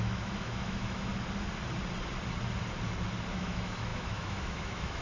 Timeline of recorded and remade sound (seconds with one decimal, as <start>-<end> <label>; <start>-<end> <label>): 0.0-1.1 remade; 1.1-3.3 recorded; 3.3-5.0 remade